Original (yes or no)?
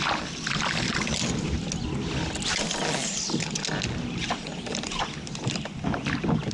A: yes